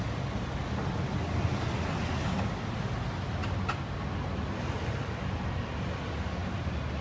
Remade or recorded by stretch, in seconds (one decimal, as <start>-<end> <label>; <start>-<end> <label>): 0.0-7.0 recorded